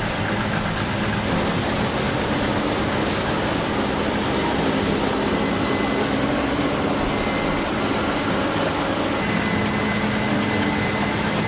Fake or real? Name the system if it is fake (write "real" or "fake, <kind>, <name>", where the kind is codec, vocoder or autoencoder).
real